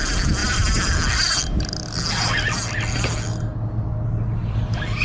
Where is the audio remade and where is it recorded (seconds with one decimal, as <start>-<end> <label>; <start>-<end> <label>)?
0.0-5.0 recorded